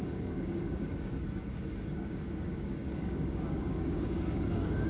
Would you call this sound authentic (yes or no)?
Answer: no